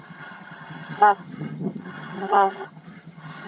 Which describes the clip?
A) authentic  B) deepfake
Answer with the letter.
B